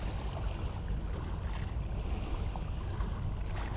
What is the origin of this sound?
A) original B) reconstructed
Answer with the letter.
A